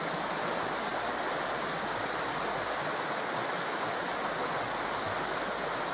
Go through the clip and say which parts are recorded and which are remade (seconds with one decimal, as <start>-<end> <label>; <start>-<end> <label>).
0.0-5.9 recorded